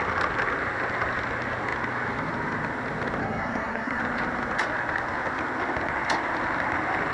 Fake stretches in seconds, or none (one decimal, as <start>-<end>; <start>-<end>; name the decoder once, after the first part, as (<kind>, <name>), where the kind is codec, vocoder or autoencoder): 3.2-4.0 (codec, SNAC)